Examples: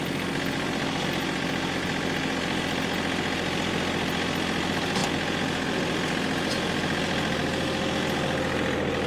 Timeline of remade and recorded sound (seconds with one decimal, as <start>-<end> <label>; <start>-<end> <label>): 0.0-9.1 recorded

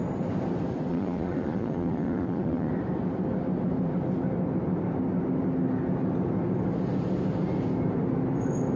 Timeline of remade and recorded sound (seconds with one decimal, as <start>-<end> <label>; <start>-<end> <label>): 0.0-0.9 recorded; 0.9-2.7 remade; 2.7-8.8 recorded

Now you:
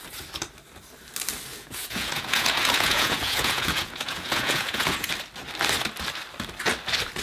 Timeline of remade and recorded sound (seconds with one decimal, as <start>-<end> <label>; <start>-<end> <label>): 0.0-1.5 recorded; 1.5-5.1 remade; 5.1-7.2 recorded

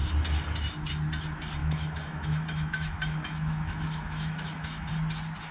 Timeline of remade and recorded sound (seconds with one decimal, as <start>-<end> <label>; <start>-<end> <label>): 0.0-1.6 recorded; 1.6-4.9 remade; 4.9-5.5 recorded

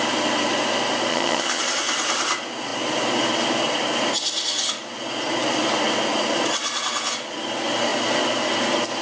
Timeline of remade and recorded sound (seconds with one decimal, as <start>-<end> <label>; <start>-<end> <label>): 0.0-1.1 recorded; 1.1-1.6 remade; 1.6-9.0 recorded